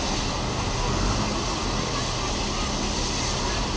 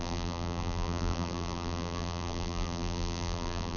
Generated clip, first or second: second